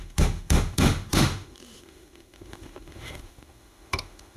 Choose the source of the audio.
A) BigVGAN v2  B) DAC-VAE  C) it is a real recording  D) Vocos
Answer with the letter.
B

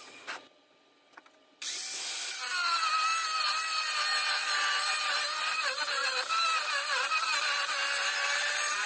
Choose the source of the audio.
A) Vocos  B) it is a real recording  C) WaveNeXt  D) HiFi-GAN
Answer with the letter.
B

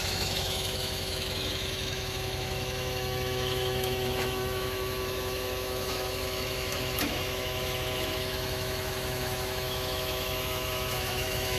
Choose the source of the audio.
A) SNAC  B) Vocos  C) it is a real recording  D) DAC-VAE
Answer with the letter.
D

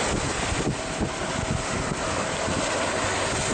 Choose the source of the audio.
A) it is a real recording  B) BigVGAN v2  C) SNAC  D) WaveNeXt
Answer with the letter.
A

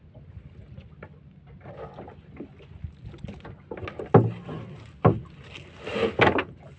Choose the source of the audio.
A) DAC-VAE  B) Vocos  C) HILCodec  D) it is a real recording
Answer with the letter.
D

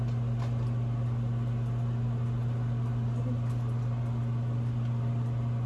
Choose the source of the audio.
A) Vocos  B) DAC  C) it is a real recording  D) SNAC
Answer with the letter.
C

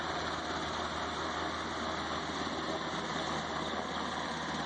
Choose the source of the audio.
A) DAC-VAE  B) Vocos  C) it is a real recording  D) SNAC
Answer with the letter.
C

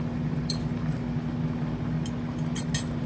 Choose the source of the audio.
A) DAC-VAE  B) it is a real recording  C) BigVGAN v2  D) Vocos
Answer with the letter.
B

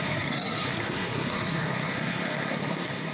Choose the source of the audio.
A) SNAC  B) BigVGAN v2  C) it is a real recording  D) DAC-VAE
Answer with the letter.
A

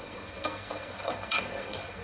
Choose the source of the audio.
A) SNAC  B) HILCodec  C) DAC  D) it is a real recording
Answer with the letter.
A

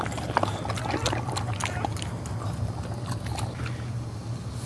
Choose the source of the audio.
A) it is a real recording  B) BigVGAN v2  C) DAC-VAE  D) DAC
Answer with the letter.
A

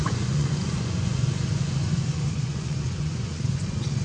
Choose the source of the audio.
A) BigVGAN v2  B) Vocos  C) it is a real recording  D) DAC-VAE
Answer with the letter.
B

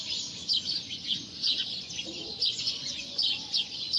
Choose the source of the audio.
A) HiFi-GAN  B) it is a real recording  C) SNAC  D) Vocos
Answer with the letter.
D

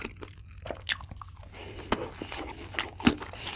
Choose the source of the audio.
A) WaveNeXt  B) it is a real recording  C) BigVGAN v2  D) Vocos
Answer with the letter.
B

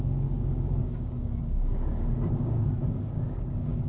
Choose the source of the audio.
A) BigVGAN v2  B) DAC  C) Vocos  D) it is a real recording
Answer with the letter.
B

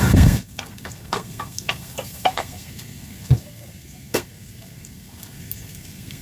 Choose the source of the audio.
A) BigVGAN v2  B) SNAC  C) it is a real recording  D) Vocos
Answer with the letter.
B